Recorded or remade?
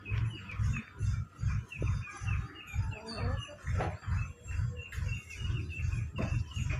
recorded